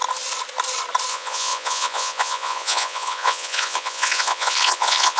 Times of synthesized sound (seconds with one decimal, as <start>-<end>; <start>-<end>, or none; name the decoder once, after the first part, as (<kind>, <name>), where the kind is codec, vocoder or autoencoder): 1.1-5.2 (vocoder, Vocos)